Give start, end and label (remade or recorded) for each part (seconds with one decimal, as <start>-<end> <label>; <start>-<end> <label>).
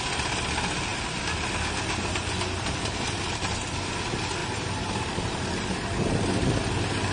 0.0-2.1 recorded; 2.1-3.7 remade; 3.7-4.4 recorded; 4.4-5.5 remade; 5.5-7.1 recorded